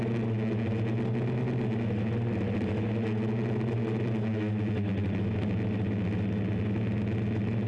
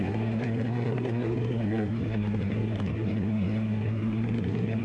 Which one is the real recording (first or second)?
first